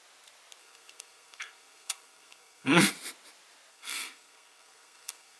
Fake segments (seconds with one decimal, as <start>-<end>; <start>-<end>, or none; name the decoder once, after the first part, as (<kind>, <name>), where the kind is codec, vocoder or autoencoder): 0.6-2.9 (codec, SNAC); 3.7-5.4